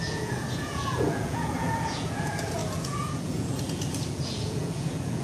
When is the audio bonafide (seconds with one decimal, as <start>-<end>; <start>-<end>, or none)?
none